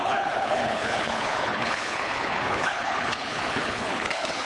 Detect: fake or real fake